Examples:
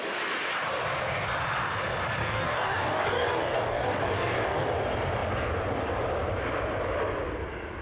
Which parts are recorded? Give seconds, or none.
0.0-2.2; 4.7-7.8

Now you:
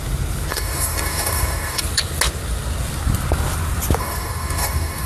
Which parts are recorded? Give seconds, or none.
0.0-0.5; 1.8-4.0

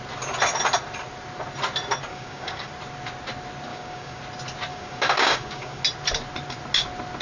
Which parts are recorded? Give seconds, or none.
0.0-2.1; 2.7-3.7; 4.2-4.7; 5.8-7.2

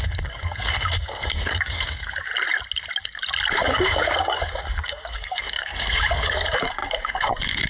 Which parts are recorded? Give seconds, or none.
2.3-3.5

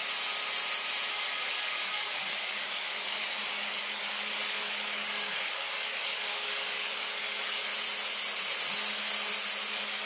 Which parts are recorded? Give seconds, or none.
0.0-1.1; 7.7-9.7